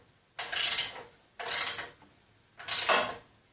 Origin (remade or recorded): recorded